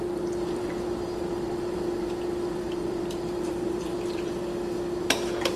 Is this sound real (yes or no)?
no